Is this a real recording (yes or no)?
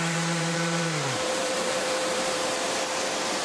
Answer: no